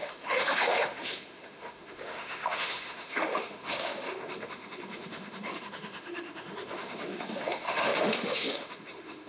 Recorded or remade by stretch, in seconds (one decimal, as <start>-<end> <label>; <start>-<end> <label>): 0.0-9.3 remade